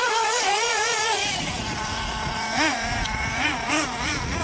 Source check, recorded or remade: remade